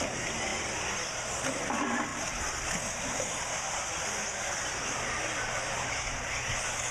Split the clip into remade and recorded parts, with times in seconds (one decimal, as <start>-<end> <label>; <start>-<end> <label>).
0.0-6.9 recorded